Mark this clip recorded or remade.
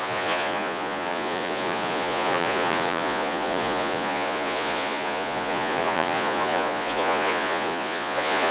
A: remade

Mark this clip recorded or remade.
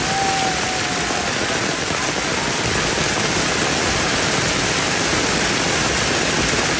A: recorded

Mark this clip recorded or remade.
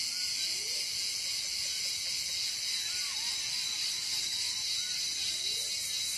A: recorded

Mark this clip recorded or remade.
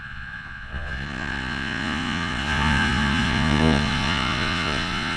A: remade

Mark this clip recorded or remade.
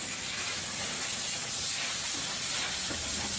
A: recorded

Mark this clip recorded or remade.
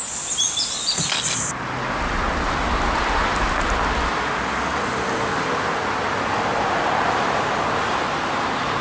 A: recorded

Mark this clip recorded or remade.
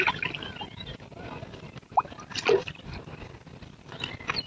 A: recorded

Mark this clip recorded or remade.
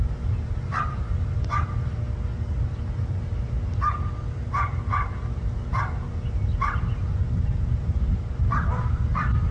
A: recorded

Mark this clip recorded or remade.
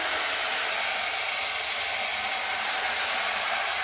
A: recorded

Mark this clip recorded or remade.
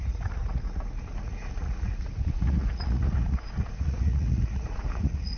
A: remade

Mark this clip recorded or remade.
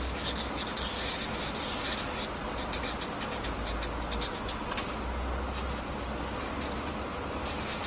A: recorded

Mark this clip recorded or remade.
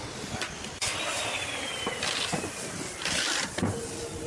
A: recorded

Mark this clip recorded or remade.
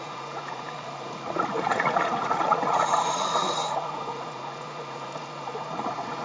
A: remade